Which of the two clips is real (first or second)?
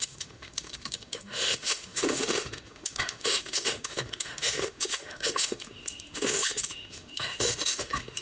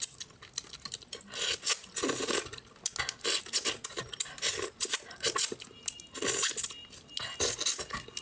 second